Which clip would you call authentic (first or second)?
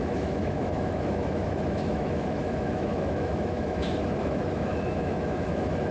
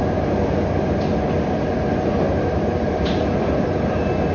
second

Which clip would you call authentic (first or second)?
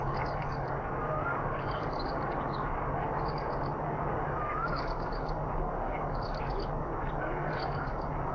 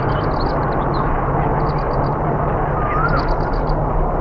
second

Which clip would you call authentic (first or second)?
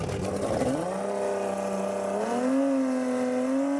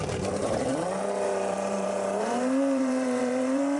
first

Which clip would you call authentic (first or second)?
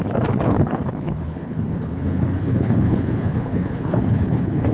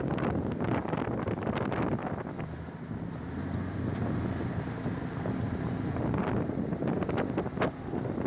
second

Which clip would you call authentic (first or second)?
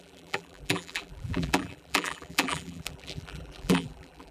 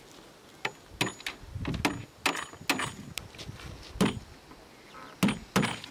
second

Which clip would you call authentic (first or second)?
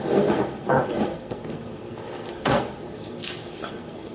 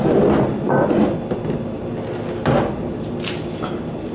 second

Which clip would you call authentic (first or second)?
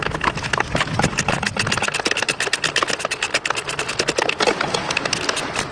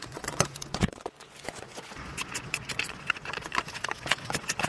first